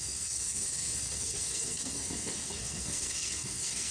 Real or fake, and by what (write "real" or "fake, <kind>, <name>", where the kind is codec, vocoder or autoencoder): fake, codec, SNAC